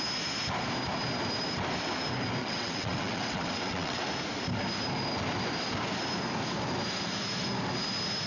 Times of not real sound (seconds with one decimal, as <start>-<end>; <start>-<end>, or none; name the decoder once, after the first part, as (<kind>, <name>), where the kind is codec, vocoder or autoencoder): 2.4-4.1 (vocoder, WaveNeXt)

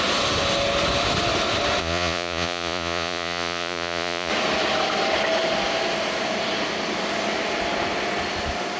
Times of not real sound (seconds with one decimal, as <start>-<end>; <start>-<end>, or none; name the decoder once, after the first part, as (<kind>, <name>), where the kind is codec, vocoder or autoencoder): 1.8-4.3 (vocoder, Vocos)

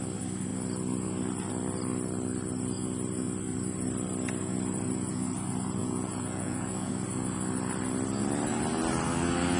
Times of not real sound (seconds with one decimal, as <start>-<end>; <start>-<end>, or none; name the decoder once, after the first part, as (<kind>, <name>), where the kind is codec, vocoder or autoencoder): 5.8-6.9 (vocoder, Vocos)

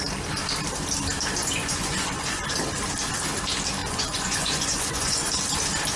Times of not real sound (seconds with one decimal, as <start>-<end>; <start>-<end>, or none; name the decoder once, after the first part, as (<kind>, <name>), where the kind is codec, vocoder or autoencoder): 1.4-2.5 (vocoder, Vocos); 3.8-5.3